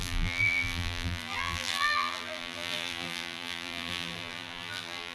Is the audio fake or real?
fake